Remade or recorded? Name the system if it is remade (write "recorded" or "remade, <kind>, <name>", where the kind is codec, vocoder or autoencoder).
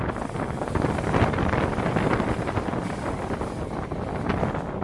recorded